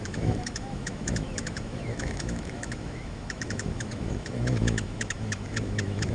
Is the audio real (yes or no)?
no